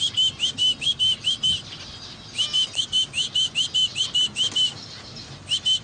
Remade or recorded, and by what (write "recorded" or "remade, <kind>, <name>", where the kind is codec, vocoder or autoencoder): recorded